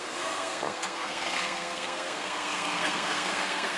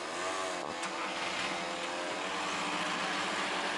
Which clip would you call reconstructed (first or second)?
first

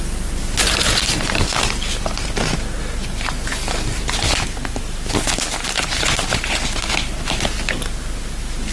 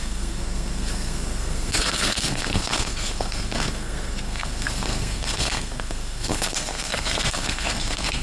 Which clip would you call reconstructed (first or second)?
second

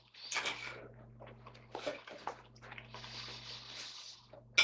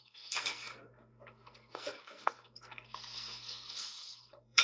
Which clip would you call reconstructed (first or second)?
second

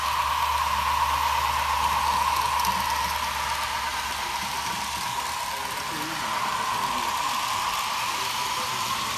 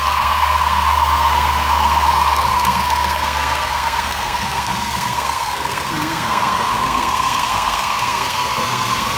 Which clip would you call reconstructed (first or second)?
second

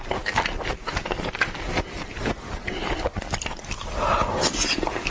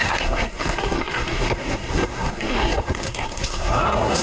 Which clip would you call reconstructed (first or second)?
second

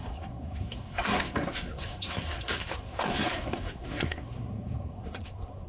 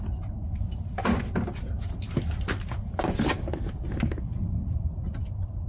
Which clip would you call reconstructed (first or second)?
first